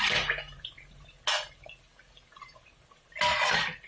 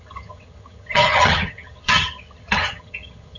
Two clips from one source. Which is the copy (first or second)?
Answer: second